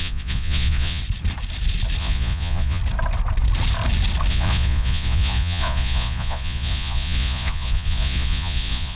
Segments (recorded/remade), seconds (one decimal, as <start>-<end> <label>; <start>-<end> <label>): 0.0-1.0 remade; 1.0-2.0 recorded; 2.0-2.8 remade; 2.8-4.3 recorded; 4.3-9.0 remade